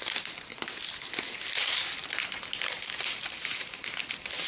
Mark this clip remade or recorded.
recorded